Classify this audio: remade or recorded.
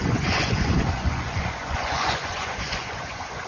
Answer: remade